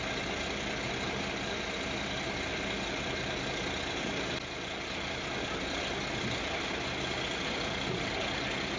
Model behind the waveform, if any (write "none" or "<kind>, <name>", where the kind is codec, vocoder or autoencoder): none